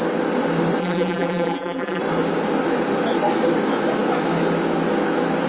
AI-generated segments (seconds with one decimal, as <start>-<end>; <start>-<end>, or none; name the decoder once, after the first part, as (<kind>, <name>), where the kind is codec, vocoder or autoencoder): 0.8-2.0 (vocoder, BigVGAN v2)